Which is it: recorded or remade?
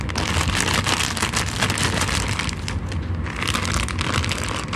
recorded